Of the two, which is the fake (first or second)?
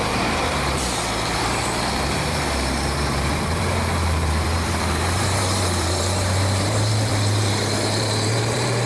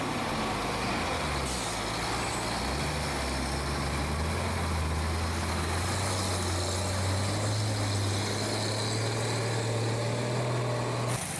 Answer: first